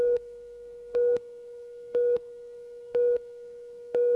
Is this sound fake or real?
fake